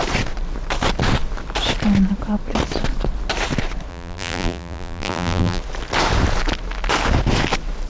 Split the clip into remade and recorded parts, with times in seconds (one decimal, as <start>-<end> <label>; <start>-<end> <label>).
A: 0.0-3.9 recorded; 3.9-5.6 remade; 5.6-7.9 recorded